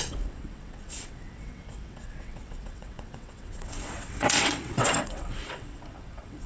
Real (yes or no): no